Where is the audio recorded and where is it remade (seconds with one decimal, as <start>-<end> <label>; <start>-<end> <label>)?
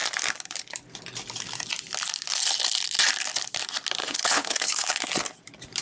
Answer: 0.0-4.0 recorded; 4.0-5.0 remade; 5.0-5.8 recorded